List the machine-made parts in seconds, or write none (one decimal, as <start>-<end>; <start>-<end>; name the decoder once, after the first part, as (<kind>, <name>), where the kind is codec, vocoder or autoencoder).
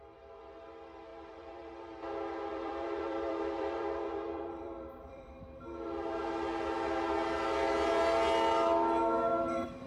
1.1-1.9 (vocoder, BigVGAN v2); 2.5-5.3